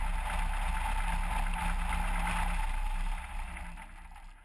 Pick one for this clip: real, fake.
real